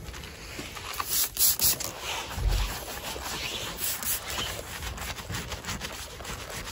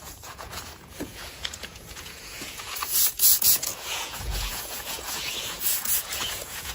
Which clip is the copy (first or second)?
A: second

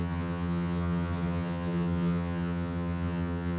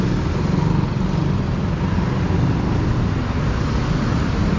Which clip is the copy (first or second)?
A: first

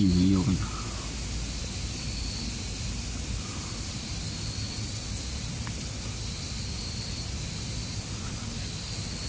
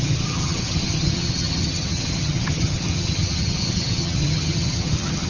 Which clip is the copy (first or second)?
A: second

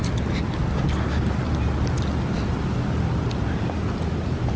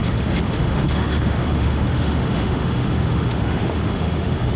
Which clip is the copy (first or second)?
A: second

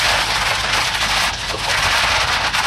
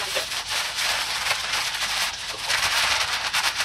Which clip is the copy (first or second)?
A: second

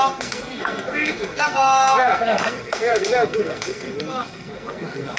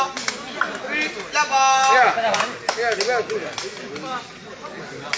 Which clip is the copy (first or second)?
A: first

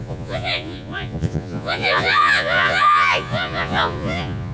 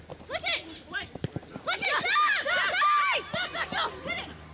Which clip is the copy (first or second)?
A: first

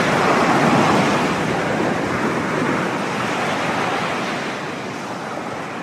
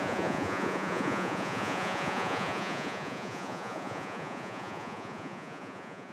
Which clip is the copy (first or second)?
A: second